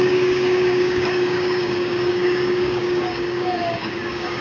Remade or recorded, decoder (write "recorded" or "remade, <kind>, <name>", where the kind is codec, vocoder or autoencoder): remade, codec, DAC